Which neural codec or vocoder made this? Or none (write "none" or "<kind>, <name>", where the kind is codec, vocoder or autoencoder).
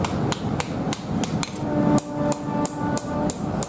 none